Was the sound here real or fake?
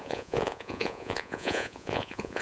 fake